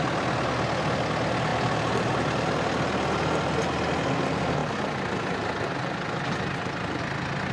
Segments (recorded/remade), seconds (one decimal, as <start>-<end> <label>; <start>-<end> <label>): 0.0-7.5 recorded